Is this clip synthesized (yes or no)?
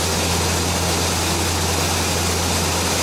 no